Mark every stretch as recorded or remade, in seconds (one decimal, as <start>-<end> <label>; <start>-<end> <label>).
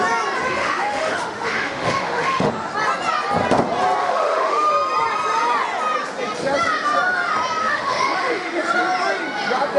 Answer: 0.0-0.6 recorded; 0.6-2.5 remade; 2.5-4.0 recorded; 4.0-4.7 remade; 4.7-7.6 recorded; 7.6-8.6 remade; 8.6-9.8 recorded